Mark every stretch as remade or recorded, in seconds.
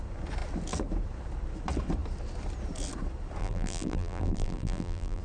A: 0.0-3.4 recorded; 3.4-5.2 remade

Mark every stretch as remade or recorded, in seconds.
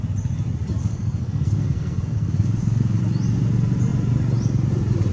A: 0.0-0.8 recorded; 0.8-3.0 remade; 3.0-5.1 recorded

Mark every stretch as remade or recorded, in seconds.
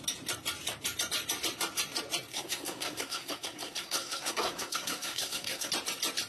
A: 0.0-2.3 recorded; 2.3-5.7 remade; 5.7-6.3 recorded